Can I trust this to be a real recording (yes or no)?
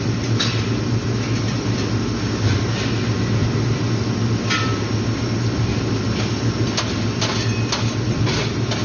yes